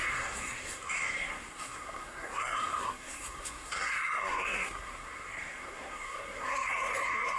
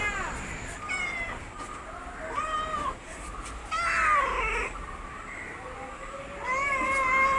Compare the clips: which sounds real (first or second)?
second